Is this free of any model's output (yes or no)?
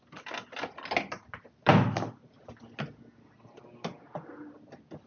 yes